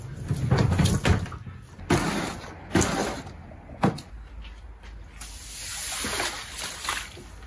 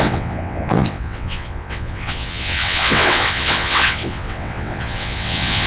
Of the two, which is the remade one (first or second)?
second